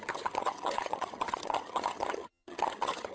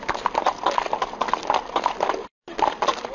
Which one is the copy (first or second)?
first